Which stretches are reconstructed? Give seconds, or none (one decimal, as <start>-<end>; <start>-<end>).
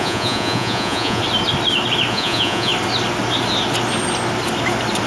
0.0-1.2; 2.1-2.7